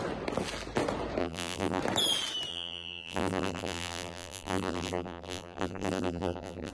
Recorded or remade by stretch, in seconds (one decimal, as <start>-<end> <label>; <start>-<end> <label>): 0.0-1.2 recorded; 1.2-1.8 remade; 1.8-2.5 recorded; 2.5-6.7 remade